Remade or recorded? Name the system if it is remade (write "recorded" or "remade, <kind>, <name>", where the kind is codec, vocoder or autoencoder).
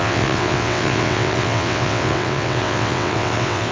remade, vocoder, WaveNeXt